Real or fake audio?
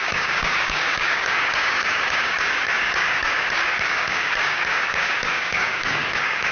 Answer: fake